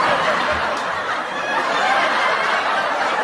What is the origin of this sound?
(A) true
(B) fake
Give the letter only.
B